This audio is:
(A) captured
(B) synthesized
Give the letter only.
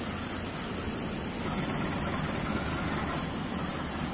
A